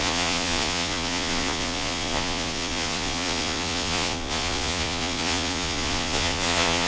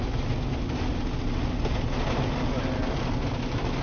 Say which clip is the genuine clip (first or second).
second